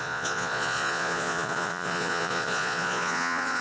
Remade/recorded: remade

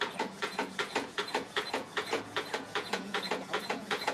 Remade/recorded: remade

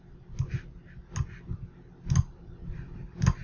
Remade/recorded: recorded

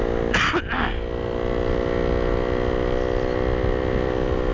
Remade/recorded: recorded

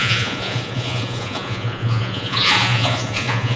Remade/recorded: remade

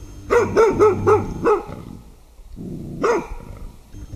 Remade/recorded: recorded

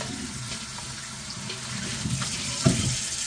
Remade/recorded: recorded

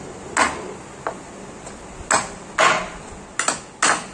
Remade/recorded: recorded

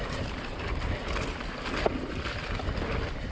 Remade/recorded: recorded